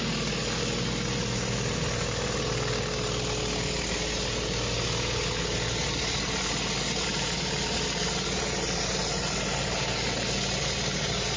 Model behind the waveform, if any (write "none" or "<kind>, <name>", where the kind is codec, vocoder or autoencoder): none